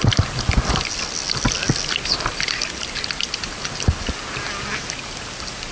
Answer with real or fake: real